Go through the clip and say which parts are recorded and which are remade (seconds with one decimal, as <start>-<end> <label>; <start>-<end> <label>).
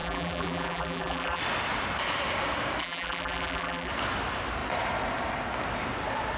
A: 0.0-1.4 remade; 1.4-2.8 recorded; 2.8-3.9 remade; 3.9-6.4 recorded